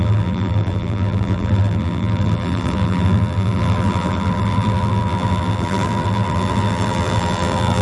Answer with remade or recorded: remade